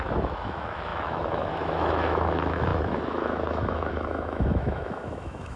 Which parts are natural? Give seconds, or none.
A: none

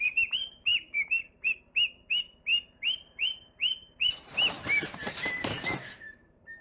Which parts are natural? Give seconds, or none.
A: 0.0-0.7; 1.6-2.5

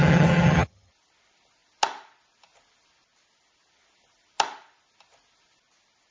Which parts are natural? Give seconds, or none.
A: 0.9-6.1

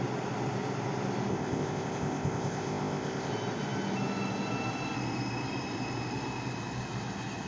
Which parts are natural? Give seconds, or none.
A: 0.0-1.3; 3.3-7.5